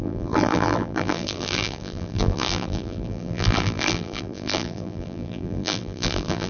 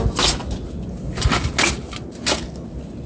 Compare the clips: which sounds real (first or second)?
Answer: second